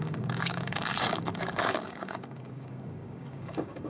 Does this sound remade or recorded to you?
remade